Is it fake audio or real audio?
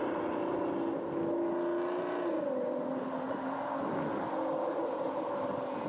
real